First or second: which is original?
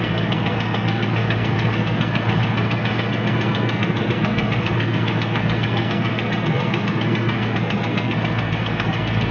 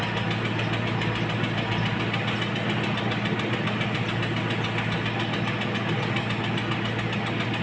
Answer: second